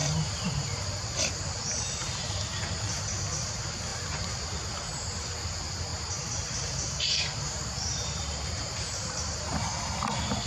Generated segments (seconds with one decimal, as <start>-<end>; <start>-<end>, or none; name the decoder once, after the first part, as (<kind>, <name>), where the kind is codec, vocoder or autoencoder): 0.0-1.2 (vocoder, BigVGAN v2); 2.0-3.0; 5.9-9.7